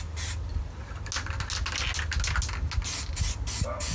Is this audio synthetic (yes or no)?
no